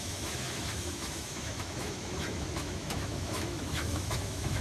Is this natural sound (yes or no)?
no